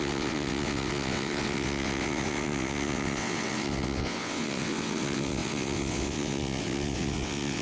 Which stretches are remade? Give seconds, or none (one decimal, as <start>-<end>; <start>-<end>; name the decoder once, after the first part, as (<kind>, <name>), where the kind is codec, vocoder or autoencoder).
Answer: 0.0-7.6 (vocoder, WaveNeXt)